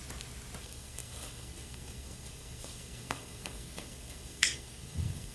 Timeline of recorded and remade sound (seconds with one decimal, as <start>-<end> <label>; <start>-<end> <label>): 0.0-0.6 recorded; 0.6-5.3 remade